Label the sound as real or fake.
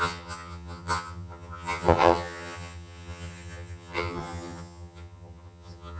fake